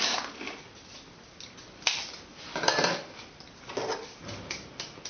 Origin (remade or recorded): recorded